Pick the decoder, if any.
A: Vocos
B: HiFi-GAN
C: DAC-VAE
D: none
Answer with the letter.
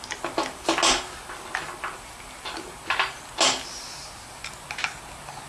D